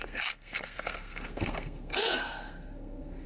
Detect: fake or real fake